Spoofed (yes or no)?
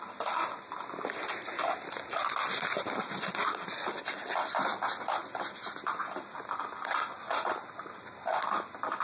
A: no